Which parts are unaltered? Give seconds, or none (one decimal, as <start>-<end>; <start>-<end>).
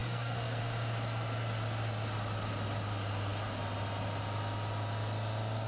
0.6-5.7